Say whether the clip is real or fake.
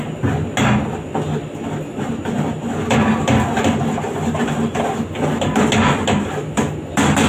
real